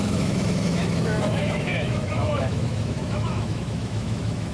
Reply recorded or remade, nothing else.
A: remade